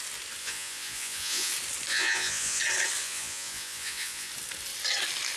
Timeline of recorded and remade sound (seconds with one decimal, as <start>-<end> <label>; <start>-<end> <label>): 0.0-0.4 recorded; 0.4-1.5 remade; 1.5-1.9 recorded; 1.9-2.6 remade; 2.6-3.0 recorded; 3.0-4.3 remade; 4.3-5.4 recorded